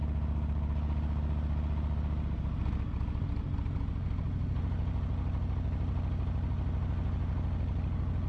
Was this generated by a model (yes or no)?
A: no